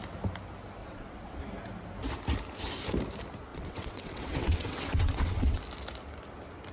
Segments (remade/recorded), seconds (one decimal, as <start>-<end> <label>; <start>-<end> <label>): 0.0-0.8 recorded; 0.8-1.4 remade; 1.4-3.5 recorded; 3.5-5.6 remade; 5.6-6.7 recorded